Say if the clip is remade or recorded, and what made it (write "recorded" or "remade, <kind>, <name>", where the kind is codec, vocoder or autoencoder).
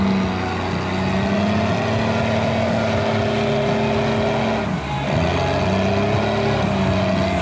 recorded